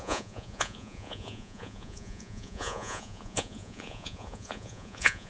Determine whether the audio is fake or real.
fake